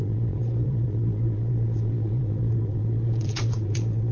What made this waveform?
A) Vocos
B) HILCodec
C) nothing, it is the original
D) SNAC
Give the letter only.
A